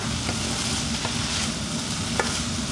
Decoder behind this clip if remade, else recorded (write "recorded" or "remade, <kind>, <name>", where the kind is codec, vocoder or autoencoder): recorded